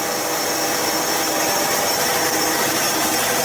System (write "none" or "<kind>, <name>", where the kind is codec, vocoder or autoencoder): none